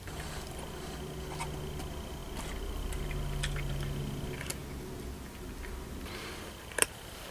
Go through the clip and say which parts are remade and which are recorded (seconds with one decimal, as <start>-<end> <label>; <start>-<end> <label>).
0.0-7.3 recorded